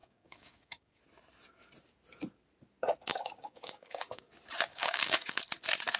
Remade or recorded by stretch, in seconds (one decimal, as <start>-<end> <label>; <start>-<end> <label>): 0.0-1.0 remade; 1.0-3.1 recorded; 3.1-4.3 remade; 4.3-4.7 recorded; 4.7-5.4 remade; 5.4-6.0 recorded